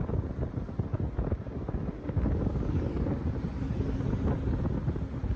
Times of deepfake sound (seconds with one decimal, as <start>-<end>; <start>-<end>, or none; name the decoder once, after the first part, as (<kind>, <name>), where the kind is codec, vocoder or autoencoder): none